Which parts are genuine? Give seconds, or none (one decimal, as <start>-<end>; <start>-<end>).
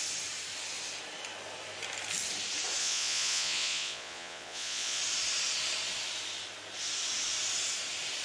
0.0-2.8; 5.0-8.2